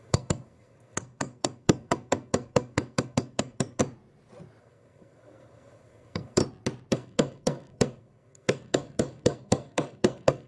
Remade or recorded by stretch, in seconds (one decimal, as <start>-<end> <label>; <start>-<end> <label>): 0.0-3.8 remade; 3.8-4.6 recorded; 4.6-6.4 remade; 6.4-6.9 recorded; 6.9-10.5 remade